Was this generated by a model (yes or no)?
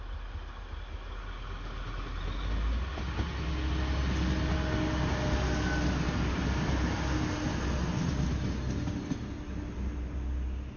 no